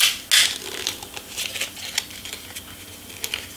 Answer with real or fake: real